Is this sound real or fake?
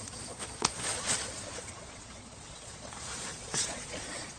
fake